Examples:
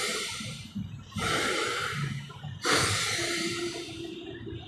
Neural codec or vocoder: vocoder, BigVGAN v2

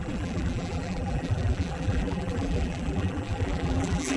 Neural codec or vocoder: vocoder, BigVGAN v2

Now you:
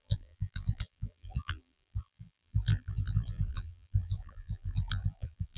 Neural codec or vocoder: vocoder, BigVGAN v2